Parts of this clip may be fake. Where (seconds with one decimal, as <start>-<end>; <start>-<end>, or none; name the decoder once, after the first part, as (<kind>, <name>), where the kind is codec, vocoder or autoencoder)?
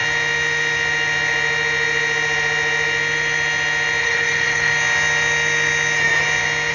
4.0-4.7 (codec, HILCodec)